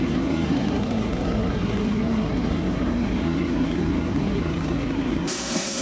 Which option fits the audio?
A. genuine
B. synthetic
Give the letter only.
B